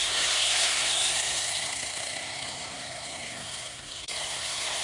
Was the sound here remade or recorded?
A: remade